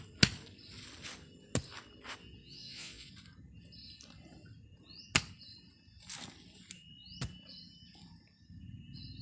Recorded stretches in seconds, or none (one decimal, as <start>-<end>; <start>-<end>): 0.0-2.4; 3.1-9.2